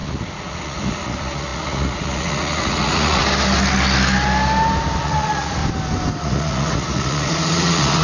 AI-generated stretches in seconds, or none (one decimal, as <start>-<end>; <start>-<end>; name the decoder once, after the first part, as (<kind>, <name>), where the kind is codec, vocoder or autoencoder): 0.0-3.2 (vocoder, Vocos); 5.0-5.6; 6.2-8.0